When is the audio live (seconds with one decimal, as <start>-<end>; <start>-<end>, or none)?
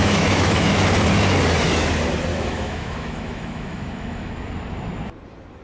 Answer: 0.7-2.3; 4.3-5.6